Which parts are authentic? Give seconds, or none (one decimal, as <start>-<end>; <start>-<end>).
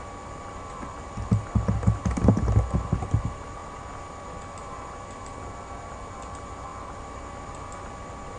0.0-8.4